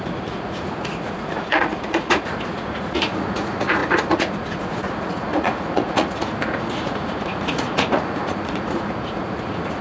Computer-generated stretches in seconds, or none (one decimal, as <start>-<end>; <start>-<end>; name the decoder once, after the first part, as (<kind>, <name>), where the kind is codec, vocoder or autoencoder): 0.0-9.8 (vocoder, Vocos)